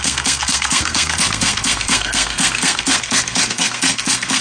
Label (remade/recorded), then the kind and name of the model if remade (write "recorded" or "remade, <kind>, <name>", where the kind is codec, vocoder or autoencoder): remade, codec, SNAC